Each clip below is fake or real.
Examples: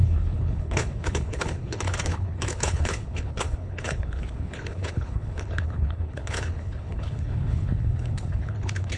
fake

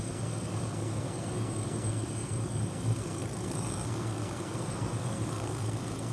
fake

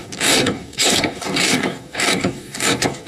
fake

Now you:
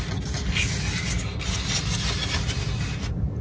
real